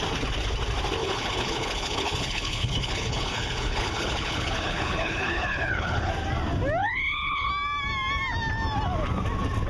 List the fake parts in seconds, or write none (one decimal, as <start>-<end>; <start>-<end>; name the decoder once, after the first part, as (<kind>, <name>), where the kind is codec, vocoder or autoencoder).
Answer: 1.0-6.1 (codec, HILCodec); 6.8-7.5